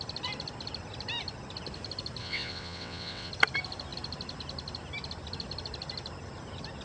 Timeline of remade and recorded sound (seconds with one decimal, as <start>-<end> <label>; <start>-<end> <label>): 0.0-2.2 recorded; 2.2-3.3 remade; 3.3-6.8 recorded